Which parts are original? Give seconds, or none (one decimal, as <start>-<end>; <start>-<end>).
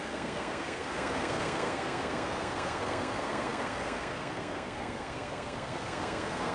none